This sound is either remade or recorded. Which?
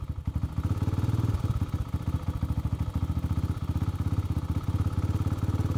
recorded